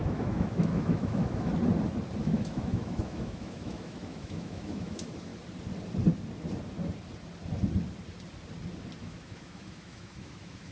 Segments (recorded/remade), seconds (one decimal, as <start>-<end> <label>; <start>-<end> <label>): 0.0-1.5 remade; 1.5-2.2 recorded; 2.2-5.3 remade; 5.3-9.0 recorded; 9.0-10.7 remade